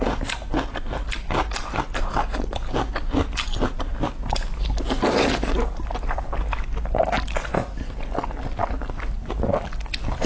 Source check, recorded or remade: recorded